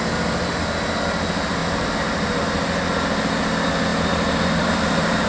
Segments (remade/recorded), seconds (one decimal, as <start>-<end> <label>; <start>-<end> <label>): 0.0-1.6 recorded; 1.6-2.4 remade; 2.4-3.9 recorded; 3.9-5.3 remade